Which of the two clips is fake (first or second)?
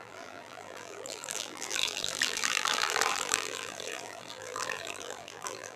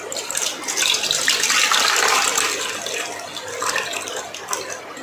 first